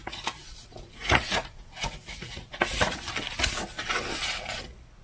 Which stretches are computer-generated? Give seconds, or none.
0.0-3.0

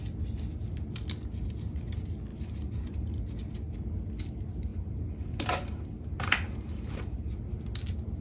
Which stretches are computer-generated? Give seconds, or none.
2.3-3.2; 4.7-7.3

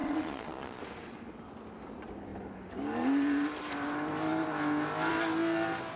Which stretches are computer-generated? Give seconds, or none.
0.0-0.8

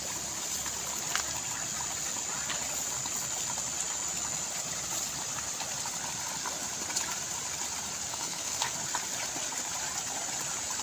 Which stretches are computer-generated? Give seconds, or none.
8.1-8.7